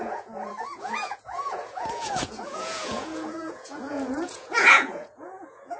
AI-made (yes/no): yes